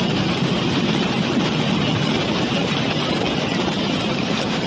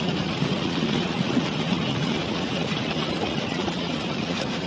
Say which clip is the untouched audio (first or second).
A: first